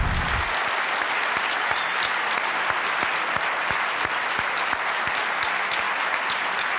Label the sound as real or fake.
real